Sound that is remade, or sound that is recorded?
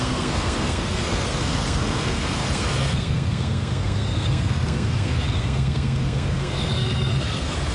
remade